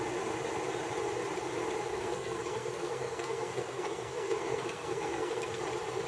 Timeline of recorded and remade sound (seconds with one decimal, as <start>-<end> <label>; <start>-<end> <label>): 0.0-1.9 recorded; 1.9-5.6 remade; 5.6-6.1 recorded